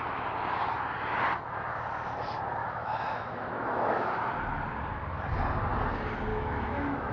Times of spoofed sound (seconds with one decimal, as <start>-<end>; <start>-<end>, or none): 2.6-4.3; 6.3-7.1